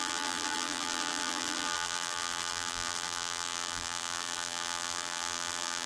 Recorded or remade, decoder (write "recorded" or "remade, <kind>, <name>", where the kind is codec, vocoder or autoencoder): remade, vocoder, BigVGAN v2